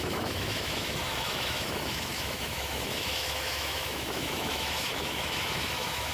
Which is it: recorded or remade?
remade